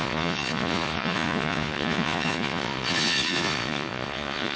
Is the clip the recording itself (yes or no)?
no